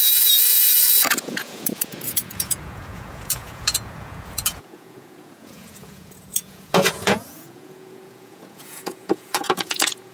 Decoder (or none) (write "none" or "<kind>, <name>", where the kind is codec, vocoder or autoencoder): vocoder, Vocos